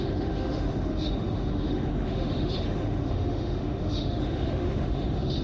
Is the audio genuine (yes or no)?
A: no